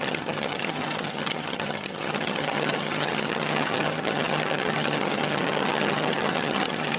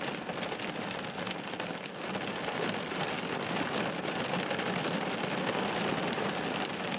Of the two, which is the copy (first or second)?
first